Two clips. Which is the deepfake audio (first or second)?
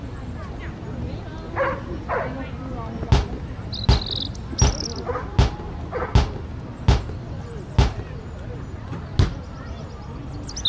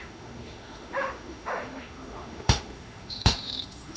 second